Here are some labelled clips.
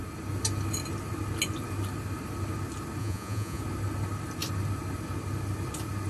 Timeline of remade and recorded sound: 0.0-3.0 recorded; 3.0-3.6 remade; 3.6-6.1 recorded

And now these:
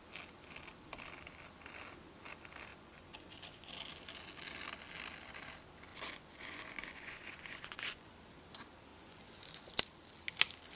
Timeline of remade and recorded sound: 0.0-2.7 recorded; 2.7-3.7 remade; 3.7-5.9 recorded; 5.9-8.1 remade; 8.1-8.9 recorded; 8.9-9.7 remade; 9.7-10.8 recorded

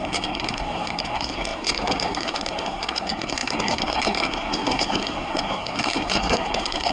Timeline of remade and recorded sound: 0.0-6.9 remade

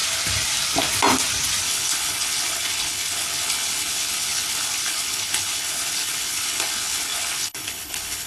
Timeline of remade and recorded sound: 0.0-1.6 recorded; 1.6-8.3 remade

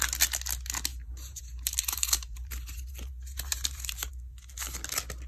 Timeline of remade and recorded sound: 0.0-0.9 recorded; 0.9-4.1 remade; 4.1-5.3 recorded

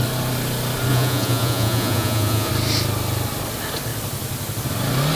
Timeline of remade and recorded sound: 0.0-0.9 recorded; 0.9-2.5 remade; 2.5-5.2 recorded

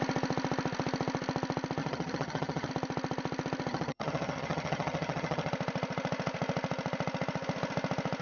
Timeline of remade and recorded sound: 0.0-1.8 recorded; 1.8-2.7 remade; 2.7-3.7 recorded; 3.7-5.5 remade; 5.5-8.2 recorded

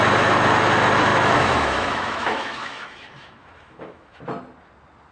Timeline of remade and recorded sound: 0.0-1.1 recorded; 1.1-4.2 remade; 4.2-5.1 recorded